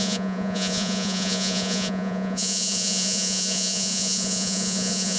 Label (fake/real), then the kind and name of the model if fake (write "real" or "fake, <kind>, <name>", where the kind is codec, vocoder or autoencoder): fake, vocoder, Vocos